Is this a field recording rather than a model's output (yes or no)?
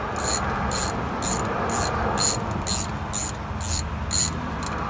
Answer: yes